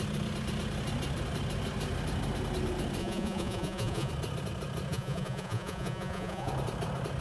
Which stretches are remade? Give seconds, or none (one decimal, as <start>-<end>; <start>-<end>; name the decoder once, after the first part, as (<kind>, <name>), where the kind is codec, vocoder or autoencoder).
3.0-4.1 (vocoder, Vocos); 4.9-6.5